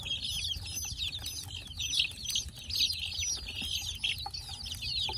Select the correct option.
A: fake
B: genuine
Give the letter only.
B